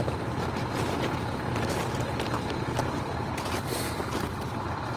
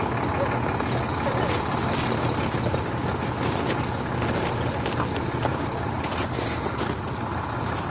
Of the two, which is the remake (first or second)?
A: first